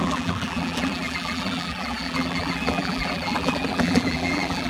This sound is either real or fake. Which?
fake